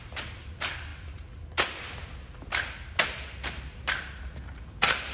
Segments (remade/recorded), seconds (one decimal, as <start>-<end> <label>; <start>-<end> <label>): 0.0-5.1 recorded